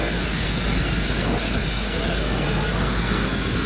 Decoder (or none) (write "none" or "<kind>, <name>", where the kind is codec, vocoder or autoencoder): codec, SNAC